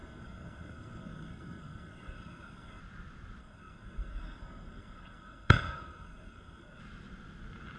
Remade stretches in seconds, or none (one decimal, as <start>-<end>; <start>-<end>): 0.0-2.8; 3.4-6.8